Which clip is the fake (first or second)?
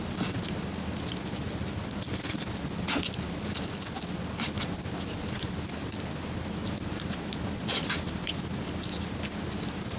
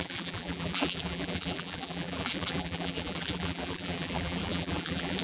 second